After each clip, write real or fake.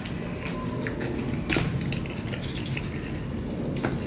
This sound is real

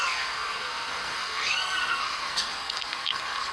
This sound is fake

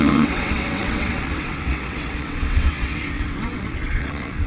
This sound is fake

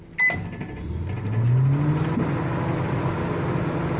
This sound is real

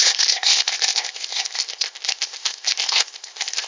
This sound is fake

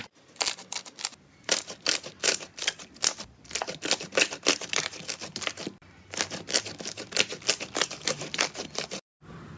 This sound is fake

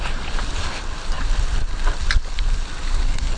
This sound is real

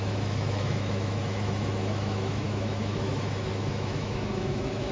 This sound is fake